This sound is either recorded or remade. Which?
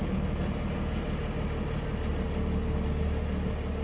recorded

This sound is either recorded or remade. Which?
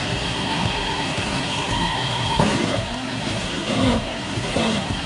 remade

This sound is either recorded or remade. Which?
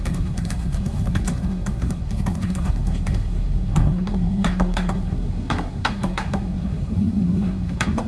remade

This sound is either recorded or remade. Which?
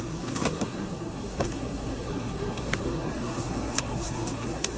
remade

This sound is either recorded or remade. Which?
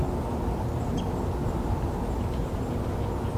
recorded